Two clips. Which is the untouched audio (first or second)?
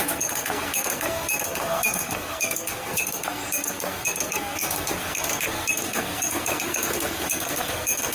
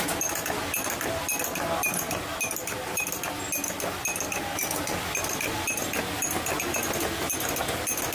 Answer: second